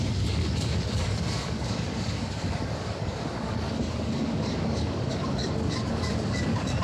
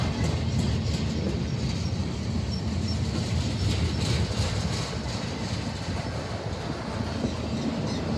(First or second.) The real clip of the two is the second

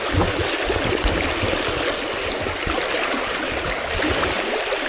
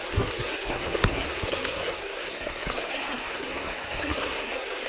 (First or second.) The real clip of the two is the first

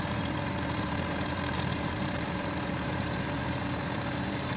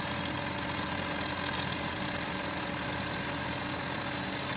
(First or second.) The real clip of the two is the second